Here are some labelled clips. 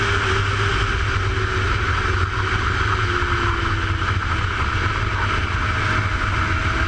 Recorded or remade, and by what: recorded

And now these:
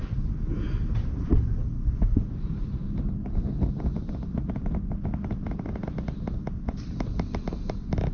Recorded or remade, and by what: recorded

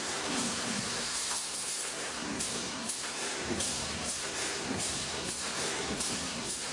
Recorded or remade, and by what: remade, codec, SNAC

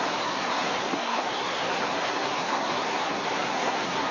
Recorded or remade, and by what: remade, codec, SNAC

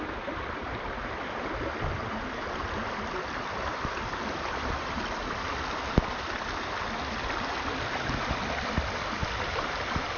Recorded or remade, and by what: recorded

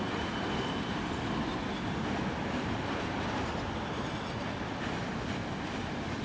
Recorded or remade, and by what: remade, vocoder, BigVGAN v2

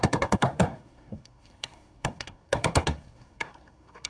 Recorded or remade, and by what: remade, codec, SNAC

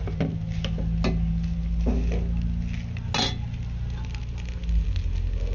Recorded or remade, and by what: recorded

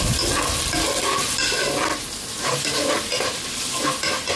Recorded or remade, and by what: recorded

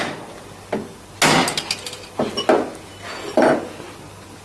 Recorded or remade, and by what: recorded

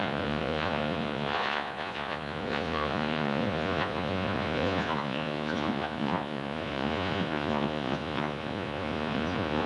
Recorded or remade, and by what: remade, vocoder, Vocos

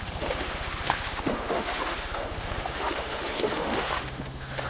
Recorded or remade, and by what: remade, autoencoder, DAC-VAE